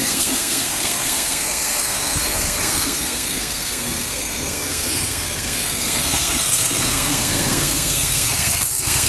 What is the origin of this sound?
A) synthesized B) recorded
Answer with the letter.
A